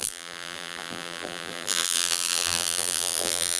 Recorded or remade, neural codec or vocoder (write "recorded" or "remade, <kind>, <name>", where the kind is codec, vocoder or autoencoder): remade, vocoder, BigVGAN v2